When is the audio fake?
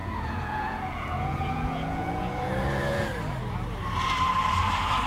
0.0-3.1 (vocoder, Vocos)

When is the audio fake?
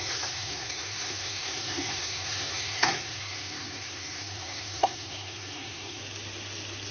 0.0-6.0 (codec, SNAC)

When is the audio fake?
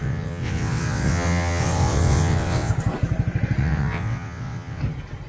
0.0-2.7 (vocoder, WaveNeXt); 3.6-4.8